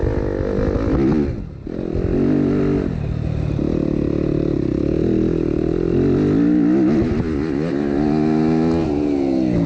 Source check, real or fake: real